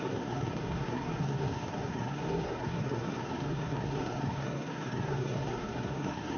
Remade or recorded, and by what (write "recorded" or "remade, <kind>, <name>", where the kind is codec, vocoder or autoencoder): remade, codec, SNAC